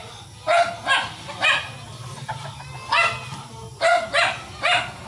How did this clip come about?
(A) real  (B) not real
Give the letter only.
A